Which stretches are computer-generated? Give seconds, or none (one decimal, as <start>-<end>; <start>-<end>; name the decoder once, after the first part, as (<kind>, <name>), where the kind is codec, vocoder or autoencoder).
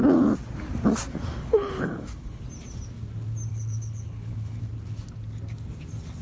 1.4-2.4 (codec, HILCodec); 3.5-4.6